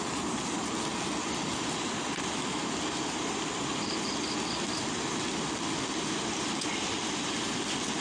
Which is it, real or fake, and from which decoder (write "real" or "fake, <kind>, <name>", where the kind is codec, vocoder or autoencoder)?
real